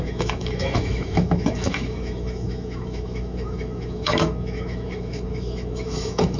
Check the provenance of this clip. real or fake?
fake